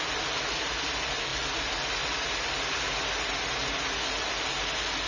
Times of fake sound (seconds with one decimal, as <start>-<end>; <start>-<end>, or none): none